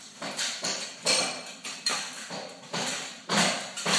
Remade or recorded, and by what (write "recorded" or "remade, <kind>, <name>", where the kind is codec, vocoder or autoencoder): remade, vocoder, BigVGAN v2